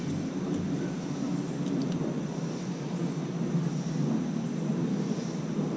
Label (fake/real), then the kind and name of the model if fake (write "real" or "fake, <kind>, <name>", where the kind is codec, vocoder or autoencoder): real